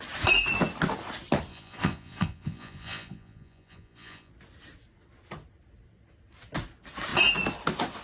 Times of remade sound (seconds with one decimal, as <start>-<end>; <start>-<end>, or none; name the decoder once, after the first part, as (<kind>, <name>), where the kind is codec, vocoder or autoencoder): 1.5-4.3 (vocoder, Vocos)